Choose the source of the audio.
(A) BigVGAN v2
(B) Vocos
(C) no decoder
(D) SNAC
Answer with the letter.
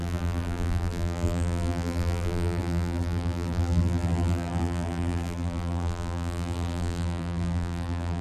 A